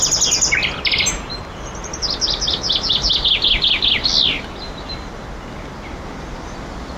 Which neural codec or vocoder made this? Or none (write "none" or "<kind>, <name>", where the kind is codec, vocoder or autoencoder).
none